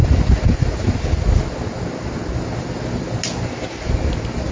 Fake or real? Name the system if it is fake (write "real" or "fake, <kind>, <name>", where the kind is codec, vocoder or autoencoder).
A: real